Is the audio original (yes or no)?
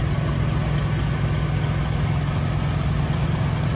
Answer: yes